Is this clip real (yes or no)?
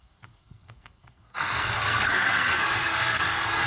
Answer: no